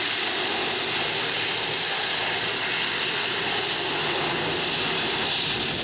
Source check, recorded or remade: recorded